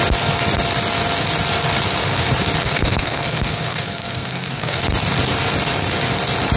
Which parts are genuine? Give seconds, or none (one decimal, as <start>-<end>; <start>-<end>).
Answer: 0.0-2.6; 4.8-6.6